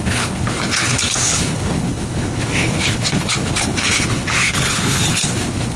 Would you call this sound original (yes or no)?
no